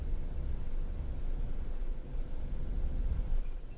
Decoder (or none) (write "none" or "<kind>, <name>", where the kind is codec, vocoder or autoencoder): vocoder, BigVGAN v2